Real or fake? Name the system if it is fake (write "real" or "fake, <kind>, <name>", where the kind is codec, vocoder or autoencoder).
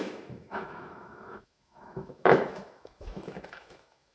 fake, autoencoder, DAC-VAE